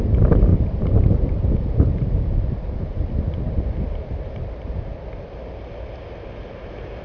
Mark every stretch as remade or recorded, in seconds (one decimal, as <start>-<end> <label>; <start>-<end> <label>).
0.0-0.5 recorded; 0.5-2.7 remade; 2.7-7.0 recorded